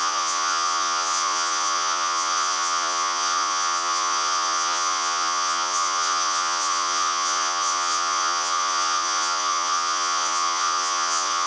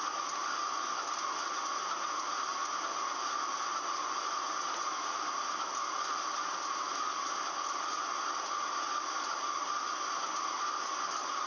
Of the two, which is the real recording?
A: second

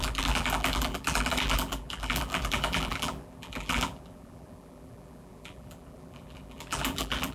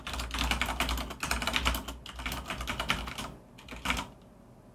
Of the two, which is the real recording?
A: second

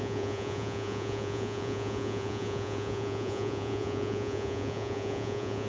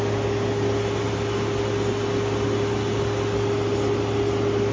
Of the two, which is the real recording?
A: second